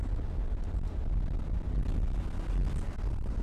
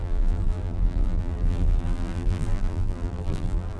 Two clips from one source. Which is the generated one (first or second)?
second